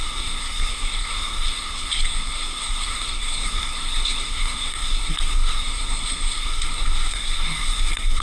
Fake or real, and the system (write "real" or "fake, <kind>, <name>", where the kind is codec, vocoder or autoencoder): fake, codec, SNAC